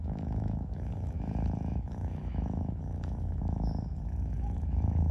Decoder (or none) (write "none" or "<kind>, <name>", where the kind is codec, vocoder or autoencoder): autoencoder, DAC-VAE